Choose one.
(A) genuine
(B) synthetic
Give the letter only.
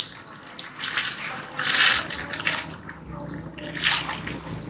A